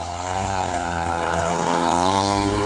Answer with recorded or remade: remade